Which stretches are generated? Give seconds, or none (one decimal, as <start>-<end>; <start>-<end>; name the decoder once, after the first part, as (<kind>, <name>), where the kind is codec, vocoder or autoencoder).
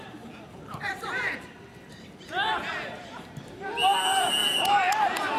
0.5-1.9 (vocoder, BigVGAN v2)